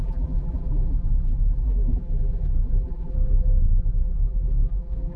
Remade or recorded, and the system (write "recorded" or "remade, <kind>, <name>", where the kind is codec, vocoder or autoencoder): remade, vocoder, BigVGAN v2